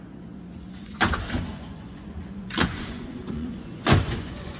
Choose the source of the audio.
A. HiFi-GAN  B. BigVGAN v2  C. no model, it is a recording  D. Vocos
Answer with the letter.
D